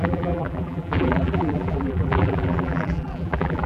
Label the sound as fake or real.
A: fake